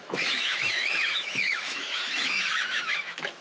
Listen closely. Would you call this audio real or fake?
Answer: fake